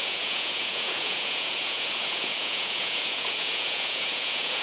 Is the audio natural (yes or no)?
no